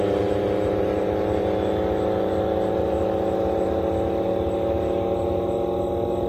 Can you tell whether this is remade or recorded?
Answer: recorded